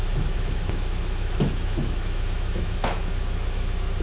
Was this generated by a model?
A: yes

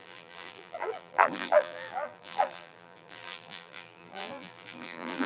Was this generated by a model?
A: yes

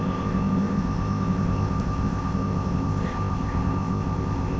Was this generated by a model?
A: yes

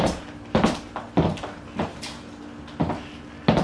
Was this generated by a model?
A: no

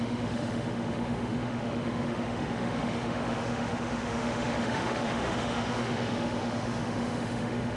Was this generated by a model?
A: yes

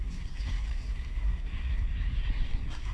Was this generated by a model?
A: yes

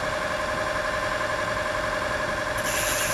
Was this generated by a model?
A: no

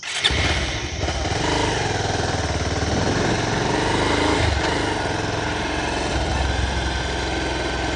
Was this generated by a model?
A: no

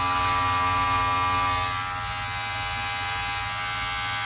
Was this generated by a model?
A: no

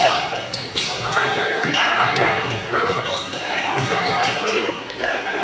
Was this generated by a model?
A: yes